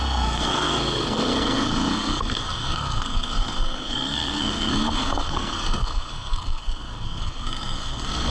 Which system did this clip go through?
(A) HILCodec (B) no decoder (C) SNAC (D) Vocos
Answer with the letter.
C